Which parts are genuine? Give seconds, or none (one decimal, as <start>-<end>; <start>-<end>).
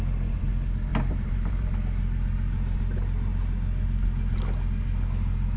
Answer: 0.0-0.9; 1.7-5.6